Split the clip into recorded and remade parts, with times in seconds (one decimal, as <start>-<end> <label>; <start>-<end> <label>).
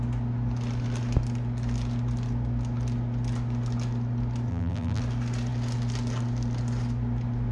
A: 0.0-4.5 recorded; 4.5-5.0 remade; 5.0-7.5 recorded